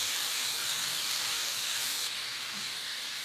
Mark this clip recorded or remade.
remade